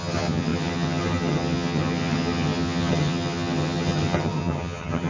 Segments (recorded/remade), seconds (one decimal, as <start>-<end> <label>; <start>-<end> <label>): 0.0-5.1 remade